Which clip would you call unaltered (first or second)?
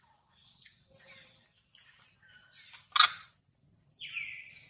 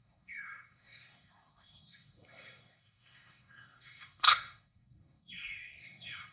first